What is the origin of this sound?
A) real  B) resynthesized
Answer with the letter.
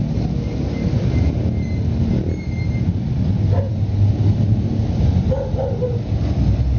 A